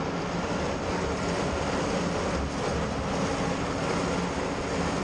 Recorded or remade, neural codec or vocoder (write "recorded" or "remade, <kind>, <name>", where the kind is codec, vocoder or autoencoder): recorded